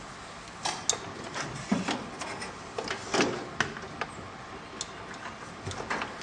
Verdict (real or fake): real